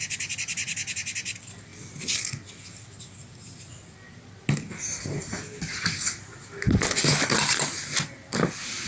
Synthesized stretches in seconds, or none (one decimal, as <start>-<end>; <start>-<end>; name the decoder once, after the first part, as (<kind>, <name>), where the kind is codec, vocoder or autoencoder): none